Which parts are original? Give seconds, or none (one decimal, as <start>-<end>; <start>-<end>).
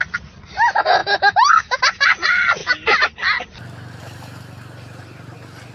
0.0-1.0; 1.8-5.7